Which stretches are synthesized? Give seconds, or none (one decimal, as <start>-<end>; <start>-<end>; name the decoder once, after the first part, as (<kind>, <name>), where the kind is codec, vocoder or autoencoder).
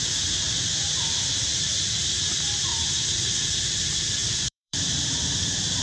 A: 2.7-3.3 (vocoder, BigVGAN v2); 4.2-5.8